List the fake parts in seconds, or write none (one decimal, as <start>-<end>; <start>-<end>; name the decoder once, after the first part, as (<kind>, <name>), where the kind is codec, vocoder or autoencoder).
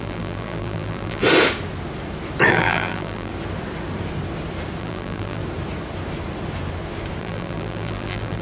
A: 0.0-1.2 (vocoder, BigVGAN v2); 2.5-3.3; 4.8-5.4; 7.2-8.4